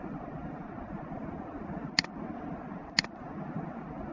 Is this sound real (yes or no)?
yes